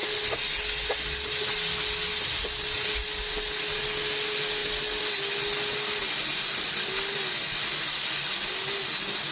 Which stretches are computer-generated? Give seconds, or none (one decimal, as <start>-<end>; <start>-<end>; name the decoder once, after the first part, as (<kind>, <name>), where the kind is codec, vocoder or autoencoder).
none